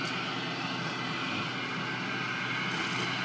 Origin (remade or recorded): recorded